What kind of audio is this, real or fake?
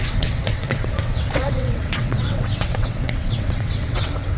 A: fake